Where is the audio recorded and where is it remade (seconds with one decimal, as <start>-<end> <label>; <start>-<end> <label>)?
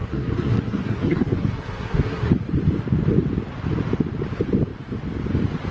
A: 0.0-2.3 remade; 2.3-5.7 recorded